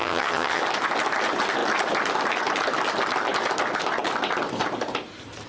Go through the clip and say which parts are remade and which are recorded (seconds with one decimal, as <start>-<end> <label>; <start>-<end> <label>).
0.0-0.6 remade; 0.6-5.5 recorded